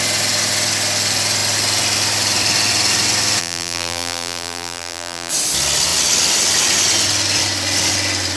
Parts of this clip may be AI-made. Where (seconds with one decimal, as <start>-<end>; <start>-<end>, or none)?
3.4-5.3